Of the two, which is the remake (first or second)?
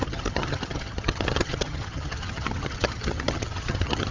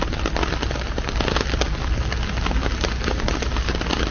first